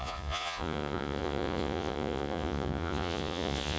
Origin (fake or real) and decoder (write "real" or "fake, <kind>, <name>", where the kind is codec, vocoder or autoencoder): fake, vocoder, Vocos